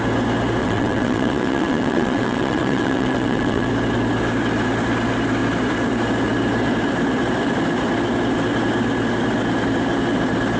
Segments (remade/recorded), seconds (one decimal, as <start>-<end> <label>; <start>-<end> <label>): 0.0-0.6 recorded; 0.6-3.7 remade; 3.7-10.6 recorded